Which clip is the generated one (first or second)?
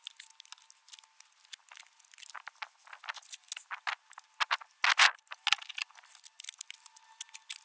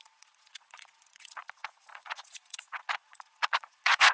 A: second